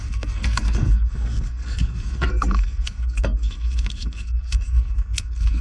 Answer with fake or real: fake